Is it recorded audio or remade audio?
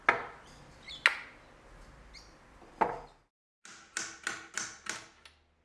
recorded